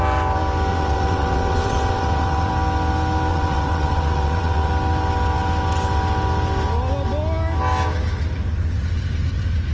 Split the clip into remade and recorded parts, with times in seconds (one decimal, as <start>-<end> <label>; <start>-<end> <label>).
0.0-0.7 recorded; 0.7-2.5 remade; 2.5-3.3 recorded; 3.3-4.7 remade; 4.7-9.7 recorded